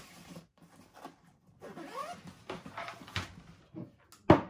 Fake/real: real